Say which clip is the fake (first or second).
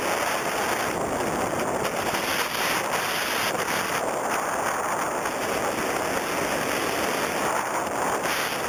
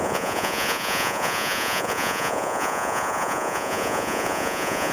second